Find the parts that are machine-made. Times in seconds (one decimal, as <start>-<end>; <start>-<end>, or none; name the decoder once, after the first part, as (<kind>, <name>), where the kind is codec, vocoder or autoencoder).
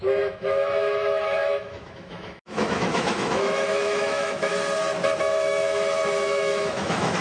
0.0-4.5 (autoencoder, DAC-VAE); 5.2-7.2